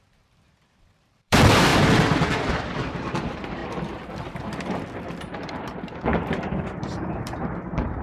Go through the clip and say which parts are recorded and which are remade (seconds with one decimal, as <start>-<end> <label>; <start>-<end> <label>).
0.0-8.0 remade